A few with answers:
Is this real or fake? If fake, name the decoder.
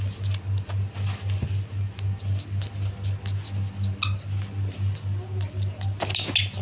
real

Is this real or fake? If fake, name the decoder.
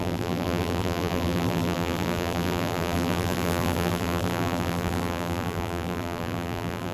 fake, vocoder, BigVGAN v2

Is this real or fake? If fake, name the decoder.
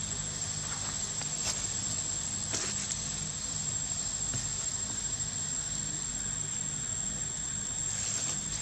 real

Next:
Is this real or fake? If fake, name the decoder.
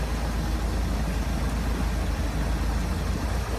real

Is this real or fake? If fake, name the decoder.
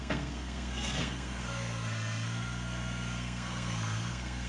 fake, codec, SNAC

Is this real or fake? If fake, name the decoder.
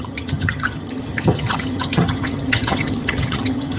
fake, vocoder, HiFi-GAN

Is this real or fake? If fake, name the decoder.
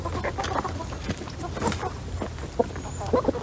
real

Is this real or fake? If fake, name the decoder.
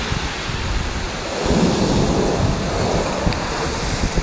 real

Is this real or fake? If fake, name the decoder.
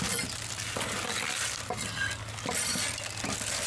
real